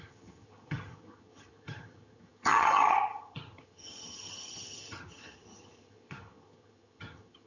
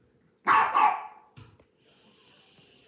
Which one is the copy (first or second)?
first